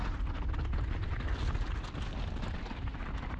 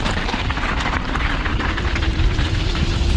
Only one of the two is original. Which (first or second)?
first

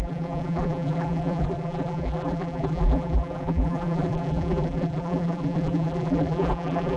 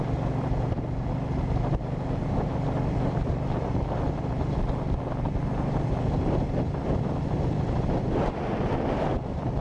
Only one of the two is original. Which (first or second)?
second